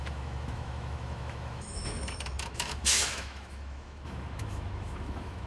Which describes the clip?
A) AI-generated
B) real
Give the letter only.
A